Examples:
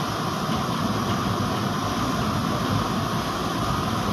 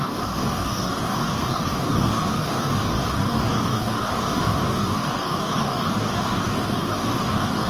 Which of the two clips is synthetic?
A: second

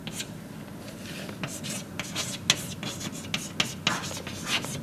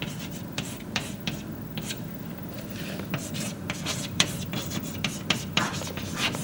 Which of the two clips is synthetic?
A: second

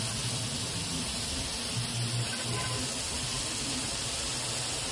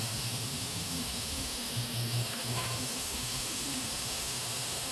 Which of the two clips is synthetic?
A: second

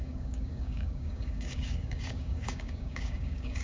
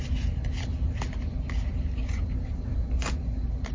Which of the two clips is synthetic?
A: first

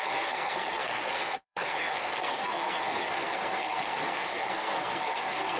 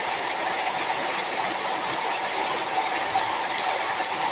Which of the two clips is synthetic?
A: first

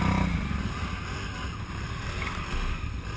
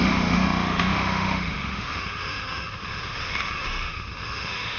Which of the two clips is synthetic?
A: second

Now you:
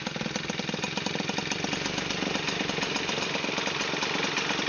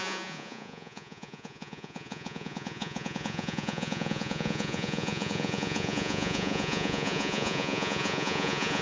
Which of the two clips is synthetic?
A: second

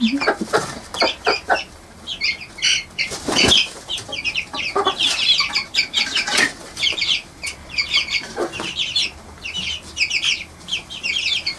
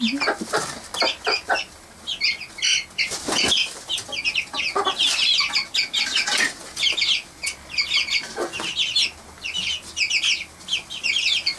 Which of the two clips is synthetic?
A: first